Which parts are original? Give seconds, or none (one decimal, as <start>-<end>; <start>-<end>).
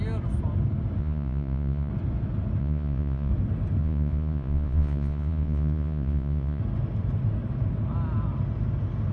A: 0.0-1.0; 1.9-2.6; 3.3-3.8; 6.6-9.1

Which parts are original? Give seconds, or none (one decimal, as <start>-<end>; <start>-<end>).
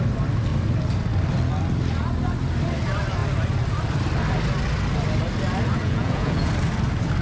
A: 0.0-5.8; 6.5-7.2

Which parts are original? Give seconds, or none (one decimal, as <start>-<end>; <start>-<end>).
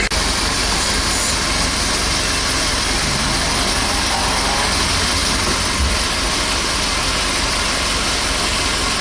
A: 0.0-9.0